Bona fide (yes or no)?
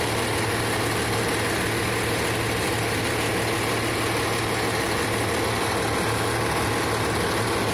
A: yes